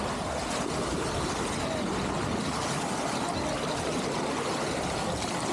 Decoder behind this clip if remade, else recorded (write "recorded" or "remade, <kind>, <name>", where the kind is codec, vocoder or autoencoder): recorded